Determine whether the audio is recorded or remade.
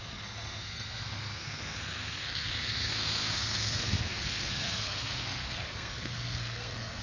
remade